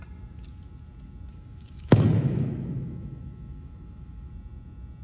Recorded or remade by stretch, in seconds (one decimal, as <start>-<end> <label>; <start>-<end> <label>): 0.0-1.3 recorded; 1.3-4.3 remade; 4.3-5.0 recorded

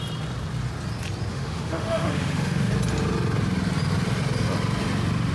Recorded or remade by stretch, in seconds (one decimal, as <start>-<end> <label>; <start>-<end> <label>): 0.0-1.3 recorded; 1.3-2.7 remade; 2.7-5.3 recorded

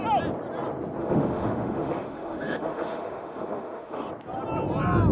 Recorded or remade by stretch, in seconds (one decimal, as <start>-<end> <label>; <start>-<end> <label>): 0.0-1.0 recorded; 1.0-4.1 remade; 4.1-5.1 recorded

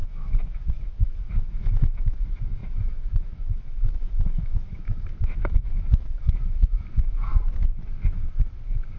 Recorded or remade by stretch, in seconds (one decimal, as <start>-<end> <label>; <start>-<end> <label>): 0.0-7.3 remade; 7.3-9.0 recorded

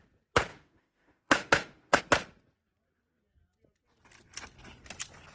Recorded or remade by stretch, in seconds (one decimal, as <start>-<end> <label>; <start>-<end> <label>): 0.0-0.5 recorded; 0.5-2.0 remade; 2.0-5.3 recorded

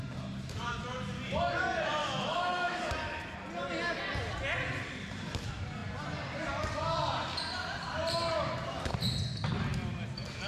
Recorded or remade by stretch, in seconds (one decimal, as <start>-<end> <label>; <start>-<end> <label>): 0.0-2.0 recorded; 2.0-2.8 remade; 2.8-10.5 recorded